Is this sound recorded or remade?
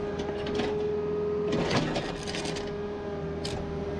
recorded